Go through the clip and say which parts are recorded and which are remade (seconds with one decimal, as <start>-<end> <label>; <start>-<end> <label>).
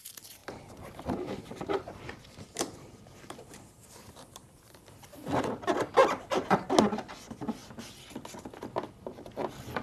0.0-0.4 recorded; 0.4-5.4 remade; 5.4-6.0 recorded; 6.0-6.7 remade; 6.7-9.8 recorded